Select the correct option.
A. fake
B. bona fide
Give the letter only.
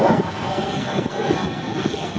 A